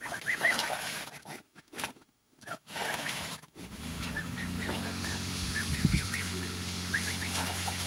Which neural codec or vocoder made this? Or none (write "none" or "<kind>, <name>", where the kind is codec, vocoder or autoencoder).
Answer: autoencoder, DAC-VAE